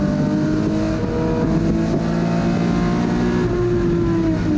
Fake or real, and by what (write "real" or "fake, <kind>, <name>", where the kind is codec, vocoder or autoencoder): real